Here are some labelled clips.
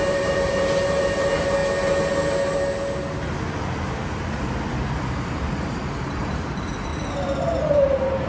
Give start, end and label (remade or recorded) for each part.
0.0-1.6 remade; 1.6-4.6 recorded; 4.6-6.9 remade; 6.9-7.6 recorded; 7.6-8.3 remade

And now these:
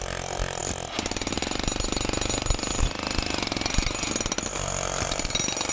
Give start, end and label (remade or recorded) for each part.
0.0-5.7 recorded

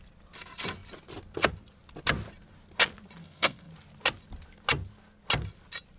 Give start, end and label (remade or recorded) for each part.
0.0-3.2 recorded; 3.2-3.7 remade; 3.7-6.0 recorded

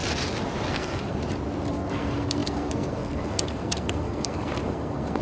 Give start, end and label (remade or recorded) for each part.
0.0-0.7 recorded; 0.7-1.2 remade; 1.2-1.7 recorded; 1.7-5.2 remade

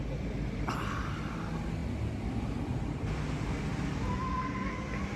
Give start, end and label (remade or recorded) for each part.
0.0-5.2 recorded